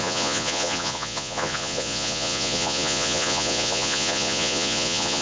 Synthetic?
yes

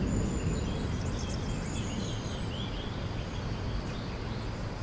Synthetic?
no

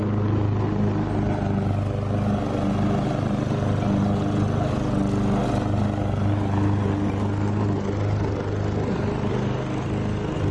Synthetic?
no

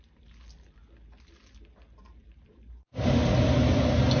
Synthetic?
no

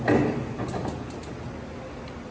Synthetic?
no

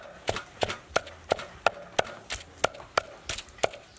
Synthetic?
no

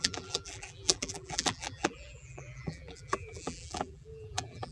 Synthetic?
yes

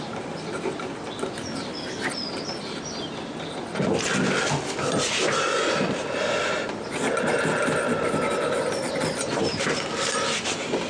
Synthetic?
no